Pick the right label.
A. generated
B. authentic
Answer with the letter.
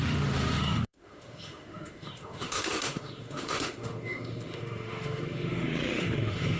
A